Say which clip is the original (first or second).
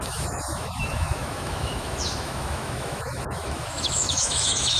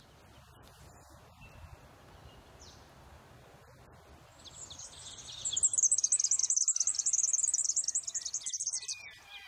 second